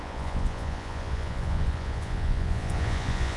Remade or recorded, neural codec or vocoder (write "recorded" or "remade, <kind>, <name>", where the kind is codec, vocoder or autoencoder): remade, vocoder, Vocos